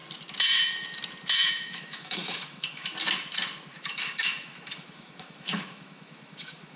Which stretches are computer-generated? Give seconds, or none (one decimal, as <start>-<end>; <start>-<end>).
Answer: 1.5-2.9; 3.7-6.8